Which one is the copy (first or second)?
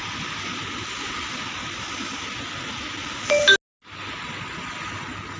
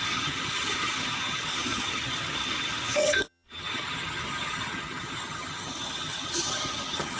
second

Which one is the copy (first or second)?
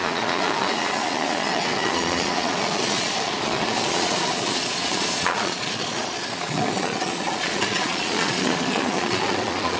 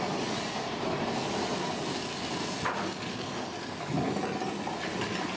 first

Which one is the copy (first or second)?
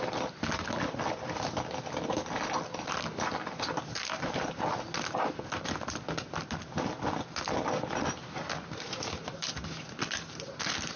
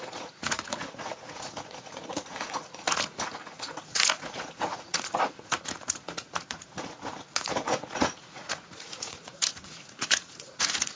second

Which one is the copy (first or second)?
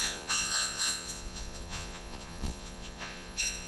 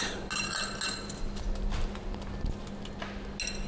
first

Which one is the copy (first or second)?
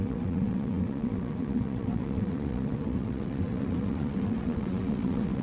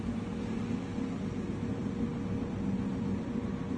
first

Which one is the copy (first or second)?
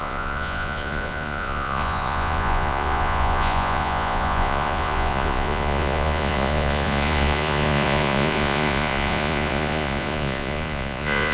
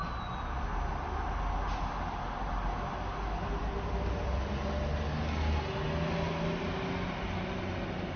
first